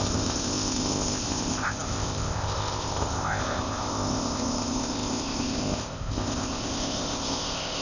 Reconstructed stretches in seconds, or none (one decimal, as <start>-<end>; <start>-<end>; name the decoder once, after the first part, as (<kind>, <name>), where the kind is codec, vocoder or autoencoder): 0.0-7.8 (codec, ZipCodec)